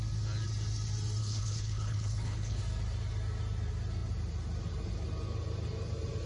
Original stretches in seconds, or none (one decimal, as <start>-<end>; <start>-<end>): 0.0-1.2; 2.6-6.3